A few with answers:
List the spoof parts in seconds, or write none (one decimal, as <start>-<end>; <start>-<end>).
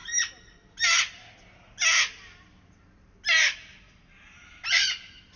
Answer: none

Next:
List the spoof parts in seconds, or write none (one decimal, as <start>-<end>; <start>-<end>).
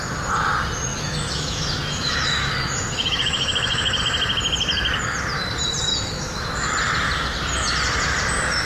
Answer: 0.9-4.0; 5.9-6.7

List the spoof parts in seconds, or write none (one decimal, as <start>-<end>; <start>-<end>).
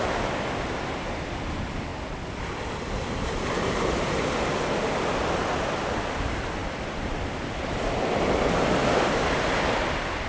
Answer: 1.9-2.4; 6.6-9.2